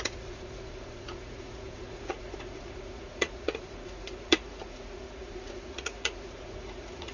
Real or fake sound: fake